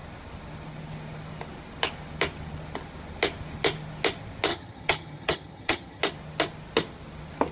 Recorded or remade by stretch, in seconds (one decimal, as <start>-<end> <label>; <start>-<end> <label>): 0.0-4.5 recorded; 4.5-6.0 remade; 6.0-7.5 recorded